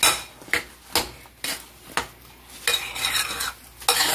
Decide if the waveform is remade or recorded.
recorded